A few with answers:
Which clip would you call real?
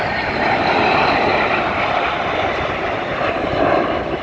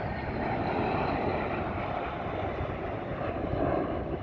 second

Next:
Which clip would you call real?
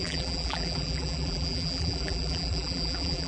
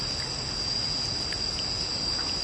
second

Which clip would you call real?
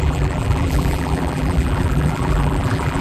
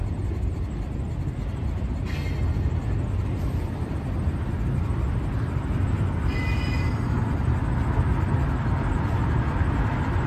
second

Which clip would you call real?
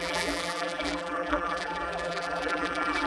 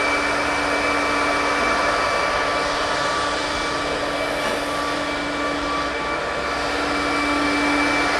second